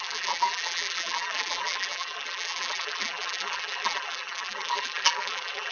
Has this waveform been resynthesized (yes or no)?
yes